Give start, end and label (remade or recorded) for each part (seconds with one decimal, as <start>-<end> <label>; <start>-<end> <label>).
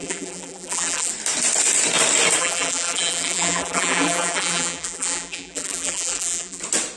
0.0-1.1 remade; 1.1-2.4 recorded; 2.4-6.6 remade; 6.6-7.0 recorded